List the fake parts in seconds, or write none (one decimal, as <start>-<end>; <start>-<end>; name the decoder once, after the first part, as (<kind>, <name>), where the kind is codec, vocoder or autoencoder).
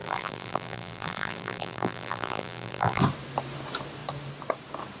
0.0-3.0 (vocoder, BigVGAN v2)